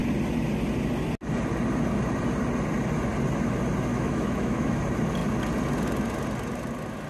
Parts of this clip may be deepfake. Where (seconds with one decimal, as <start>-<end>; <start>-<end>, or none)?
3.9-4.8